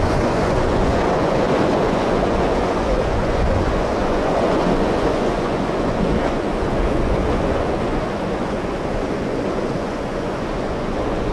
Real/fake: fake